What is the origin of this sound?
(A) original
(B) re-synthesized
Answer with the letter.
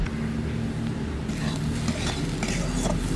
A